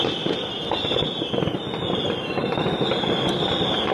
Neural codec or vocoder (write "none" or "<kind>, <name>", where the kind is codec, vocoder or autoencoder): none